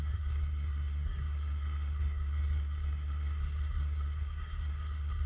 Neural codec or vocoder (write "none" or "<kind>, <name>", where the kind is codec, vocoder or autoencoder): codec, SNAC